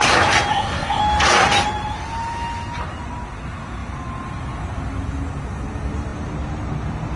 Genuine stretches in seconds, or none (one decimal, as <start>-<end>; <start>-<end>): 0.0-0.5; 1.0-7.2

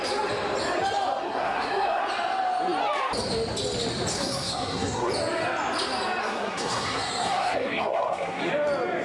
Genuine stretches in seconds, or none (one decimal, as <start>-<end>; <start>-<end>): 0.0-1.2; 2.0-4.1; 5.1-6.2; 8.5-9.0

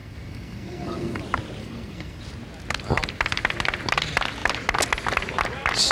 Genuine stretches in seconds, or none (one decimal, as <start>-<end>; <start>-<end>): 1.2-1.6; 2.2-5.9

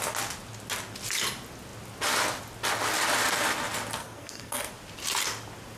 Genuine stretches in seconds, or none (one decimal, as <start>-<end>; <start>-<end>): 0.0-4.0; 4.7-5.8

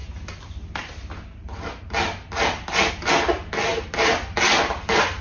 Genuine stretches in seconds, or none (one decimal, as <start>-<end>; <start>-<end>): 0.0-5.2

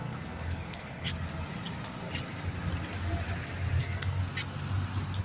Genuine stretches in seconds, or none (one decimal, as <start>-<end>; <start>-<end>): 1.1-3.8; 4.2-5.2